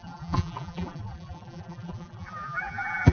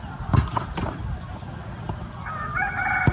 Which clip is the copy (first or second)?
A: first